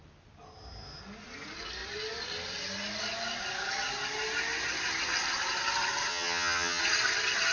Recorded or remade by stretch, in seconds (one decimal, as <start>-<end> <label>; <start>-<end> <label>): 0.0-6.1 recorded; 6.1-6.8 remade; 6.8-7.5 recorded